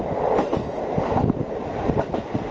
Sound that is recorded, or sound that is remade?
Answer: recorded